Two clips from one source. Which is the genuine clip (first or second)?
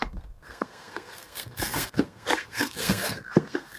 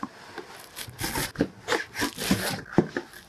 second